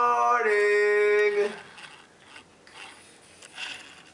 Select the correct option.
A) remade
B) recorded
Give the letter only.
B